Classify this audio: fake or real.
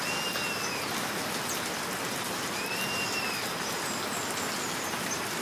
real